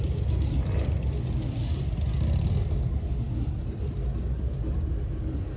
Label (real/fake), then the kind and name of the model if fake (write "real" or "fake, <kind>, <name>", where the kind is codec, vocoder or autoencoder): real